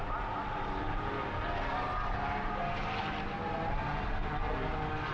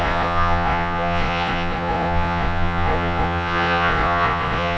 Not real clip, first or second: second